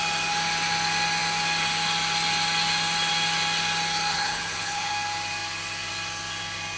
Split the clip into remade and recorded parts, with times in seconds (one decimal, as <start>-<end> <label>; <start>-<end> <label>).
0.0-4.1 recorded; 4.1-4.9 remade; 4.9-6.8 recorded